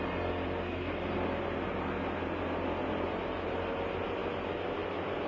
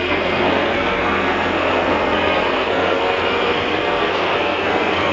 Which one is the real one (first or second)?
first